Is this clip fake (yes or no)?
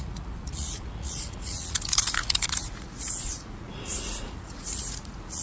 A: yes